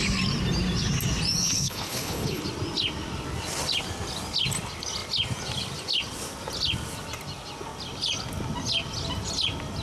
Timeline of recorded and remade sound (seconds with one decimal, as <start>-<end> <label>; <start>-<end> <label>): 0.0-1.4 recorded; 1.4-2.4 remade; 2.4-9.8 recorded